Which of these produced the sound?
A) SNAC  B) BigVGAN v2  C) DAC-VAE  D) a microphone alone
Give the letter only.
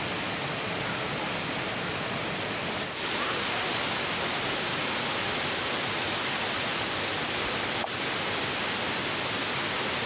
D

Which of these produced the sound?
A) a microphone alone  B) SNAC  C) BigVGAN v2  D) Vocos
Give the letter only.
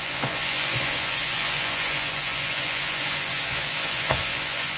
D